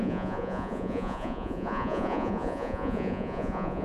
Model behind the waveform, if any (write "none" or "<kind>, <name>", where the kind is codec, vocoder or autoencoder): vocoder, Vocos